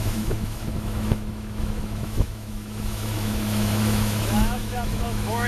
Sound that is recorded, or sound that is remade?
remade